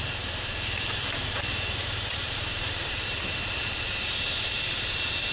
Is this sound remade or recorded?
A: remade